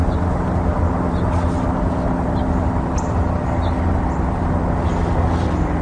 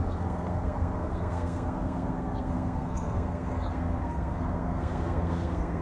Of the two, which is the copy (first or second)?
second